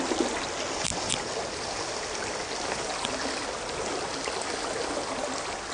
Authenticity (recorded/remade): recorded